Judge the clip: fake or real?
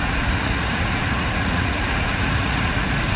fake